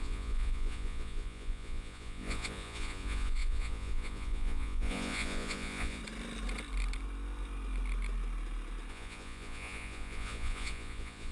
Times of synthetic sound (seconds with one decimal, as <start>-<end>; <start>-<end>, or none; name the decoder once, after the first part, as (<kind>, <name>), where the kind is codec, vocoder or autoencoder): 0.0-6.0 (vocoder, Vocos); 8.9-11.3